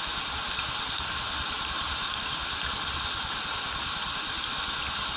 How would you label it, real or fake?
real